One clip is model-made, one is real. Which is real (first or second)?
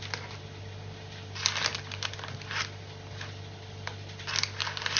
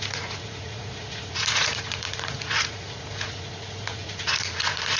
first